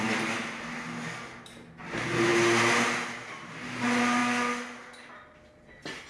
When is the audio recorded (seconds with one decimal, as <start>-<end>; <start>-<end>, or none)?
0.0-6.1